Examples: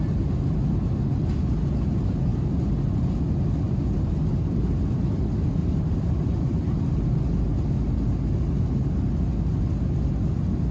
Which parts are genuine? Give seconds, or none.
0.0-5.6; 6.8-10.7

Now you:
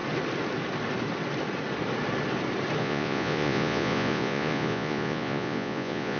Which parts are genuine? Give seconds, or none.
0.0-2.8

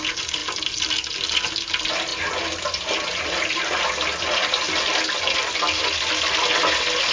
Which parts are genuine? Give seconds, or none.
0.0-7.1